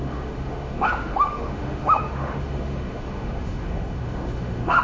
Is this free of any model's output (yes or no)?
no